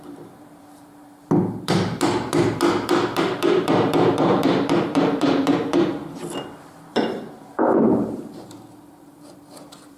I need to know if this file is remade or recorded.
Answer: remade